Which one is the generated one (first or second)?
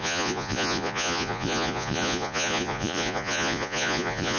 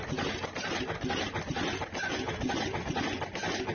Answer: first